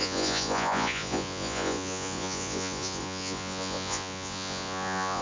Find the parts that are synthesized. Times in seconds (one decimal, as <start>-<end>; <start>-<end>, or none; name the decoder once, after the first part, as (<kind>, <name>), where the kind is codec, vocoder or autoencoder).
0.0-5.2 (vocoder, Vocos)